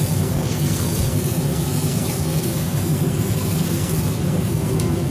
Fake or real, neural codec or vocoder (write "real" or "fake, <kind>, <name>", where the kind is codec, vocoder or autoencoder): fake, codec, SNAC